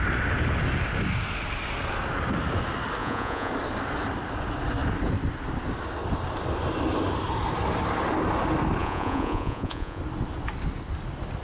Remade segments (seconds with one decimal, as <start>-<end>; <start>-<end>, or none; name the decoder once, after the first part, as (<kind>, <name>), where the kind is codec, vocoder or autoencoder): 3.0-3.5 (vocoder, Vocos); 8.8-10.0